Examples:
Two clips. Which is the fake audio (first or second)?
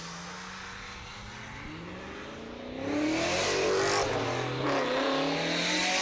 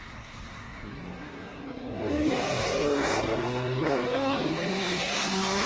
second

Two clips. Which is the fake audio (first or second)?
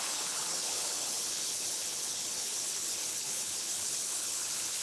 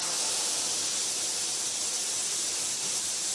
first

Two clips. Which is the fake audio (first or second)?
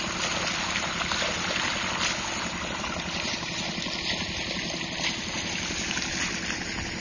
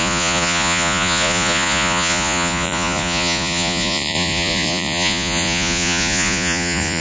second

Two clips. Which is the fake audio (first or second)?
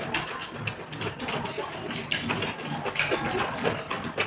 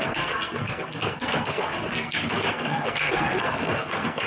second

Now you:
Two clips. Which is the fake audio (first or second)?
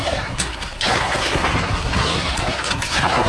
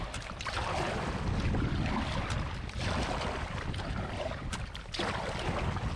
first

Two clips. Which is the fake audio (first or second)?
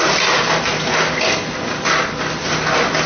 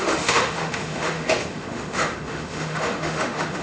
second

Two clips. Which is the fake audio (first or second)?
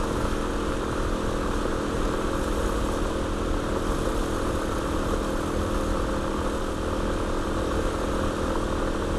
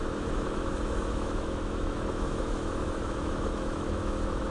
second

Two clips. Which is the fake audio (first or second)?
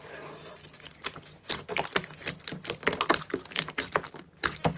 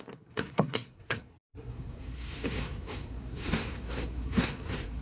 second